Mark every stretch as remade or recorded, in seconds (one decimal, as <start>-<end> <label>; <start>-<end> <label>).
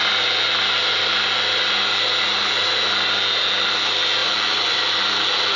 0.0-4.2 recorded; 4.2-4.8 remade; 4.8-5.6 recorded